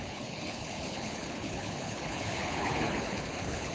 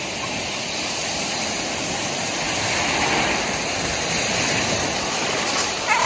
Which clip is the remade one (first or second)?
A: first